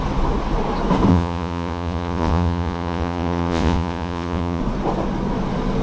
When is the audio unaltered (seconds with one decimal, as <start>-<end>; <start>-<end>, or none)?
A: 0.0-1.1; 4.6-5.8